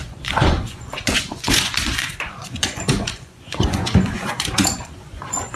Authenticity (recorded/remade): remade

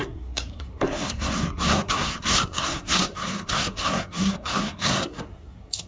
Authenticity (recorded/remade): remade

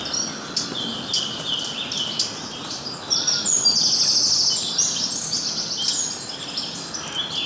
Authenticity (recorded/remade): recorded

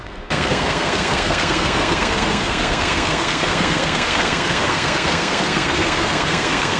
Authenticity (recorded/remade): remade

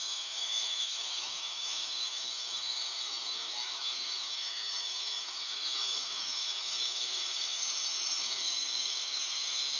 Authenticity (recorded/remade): remade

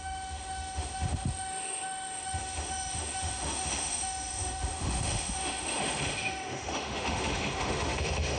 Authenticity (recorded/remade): remade